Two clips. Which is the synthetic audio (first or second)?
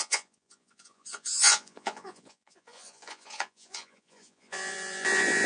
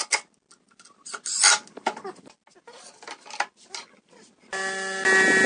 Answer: first